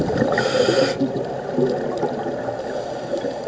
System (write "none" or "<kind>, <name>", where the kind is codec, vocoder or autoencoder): none